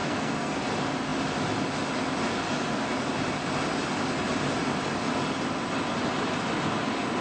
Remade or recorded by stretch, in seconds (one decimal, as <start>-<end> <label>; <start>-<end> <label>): 0.0-0.6 remade; 0.6-7.2 recorded

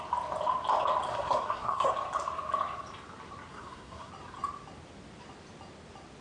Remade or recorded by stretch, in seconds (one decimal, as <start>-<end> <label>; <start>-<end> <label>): 0.0-1.1 recorded; 1.1-1.9 remade; 1.9-3.5 recorded; 3.5-4.1 remade; 4.1-6.2 recorded

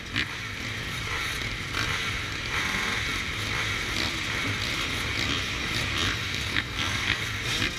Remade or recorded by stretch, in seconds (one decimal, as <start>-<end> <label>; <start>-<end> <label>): 0.0-6.3 recorded; 6.3-7.2 remade; 7.2-7.8 recorded